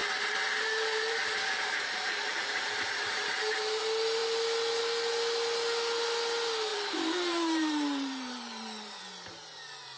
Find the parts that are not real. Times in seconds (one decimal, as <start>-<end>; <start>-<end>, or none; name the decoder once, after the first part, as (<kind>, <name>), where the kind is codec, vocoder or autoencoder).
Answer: 0.0-3.8 (vocoder, BigVGAN v2); 6.7-9.0